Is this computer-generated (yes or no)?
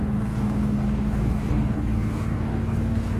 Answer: yes